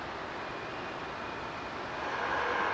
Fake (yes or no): no